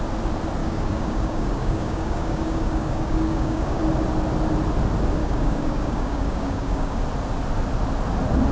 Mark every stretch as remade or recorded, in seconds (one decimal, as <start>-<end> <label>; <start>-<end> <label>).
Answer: 0.0-0.6 recorded; 0.6-3.8 remade; 3.8-5.2 recorded; 5.2-7.0 remade; 7.0-8.5 recorded